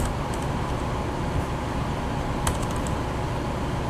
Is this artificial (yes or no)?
no